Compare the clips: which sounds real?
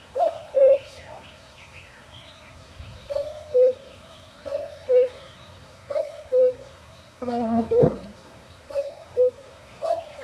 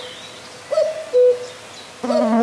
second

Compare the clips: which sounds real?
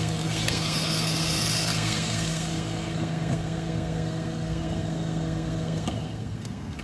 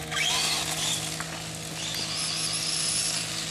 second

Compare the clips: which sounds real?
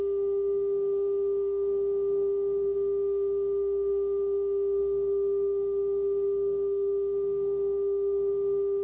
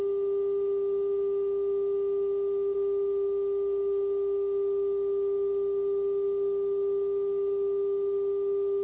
second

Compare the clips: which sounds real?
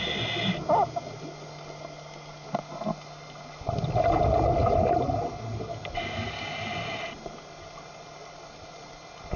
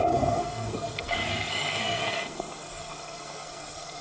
first